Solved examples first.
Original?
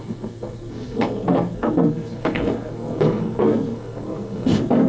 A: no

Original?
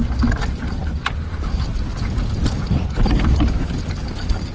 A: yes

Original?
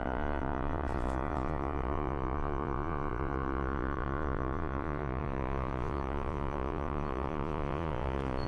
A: no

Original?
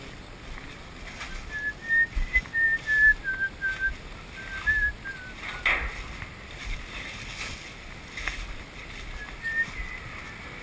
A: yes